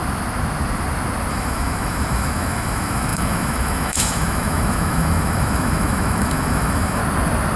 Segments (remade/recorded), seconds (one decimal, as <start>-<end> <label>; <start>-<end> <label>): 0.0-1.3 recorded; 1.3-7.0 remade; 7.0-7.6 recorded

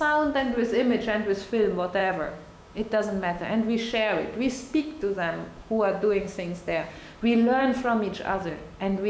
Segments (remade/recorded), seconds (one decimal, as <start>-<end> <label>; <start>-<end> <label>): 0.0-2.0 recorded; 2.0-6.9 remade; 6.9-9.1 recorded

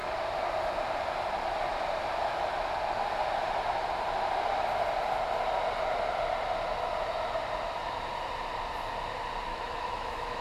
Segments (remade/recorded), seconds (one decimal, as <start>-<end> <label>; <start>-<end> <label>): 0.0-9.5 recorded; 9.5-10.4 remade